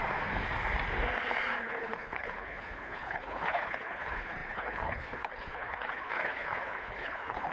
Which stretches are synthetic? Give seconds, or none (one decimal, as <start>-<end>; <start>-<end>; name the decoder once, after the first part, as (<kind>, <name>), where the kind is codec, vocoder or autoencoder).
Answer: 1.6-7.5 (codec, HILCodec)